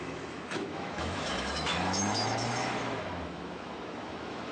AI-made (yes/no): yes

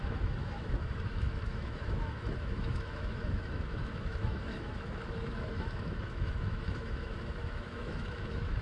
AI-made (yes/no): yes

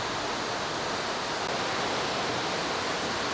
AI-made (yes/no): no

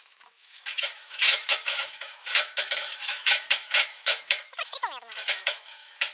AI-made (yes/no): yes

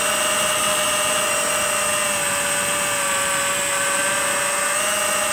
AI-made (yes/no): no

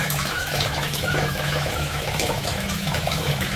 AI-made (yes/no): yes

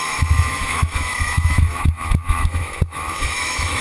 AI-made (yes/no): yes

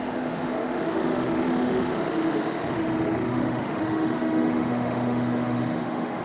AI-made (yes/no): yes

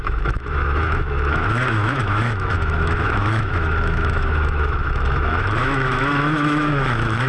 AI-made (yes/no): yes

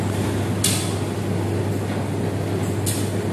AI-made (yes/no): no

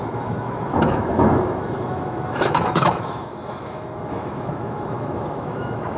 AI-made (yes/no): yes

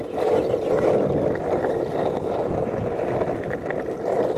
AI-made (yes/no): no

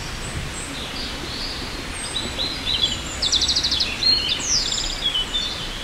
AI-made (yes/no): no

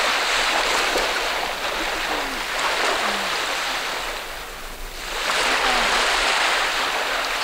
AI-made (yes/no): no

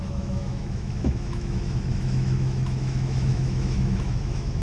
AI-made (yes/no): yes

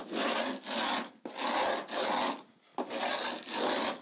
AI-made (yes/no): no